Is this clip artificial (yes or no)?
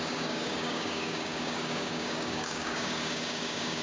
yes